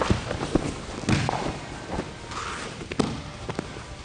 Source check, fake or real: real